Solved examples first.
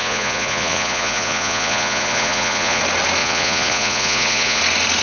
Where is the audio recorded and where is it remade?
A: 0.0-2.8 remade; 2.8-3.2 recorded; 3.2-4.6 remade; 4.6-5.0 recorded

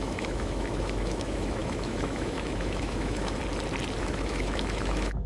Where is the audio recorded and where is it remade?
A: 0.0-3.4 remade; 3.4-4.0 recorded; 4.0-5.3 remade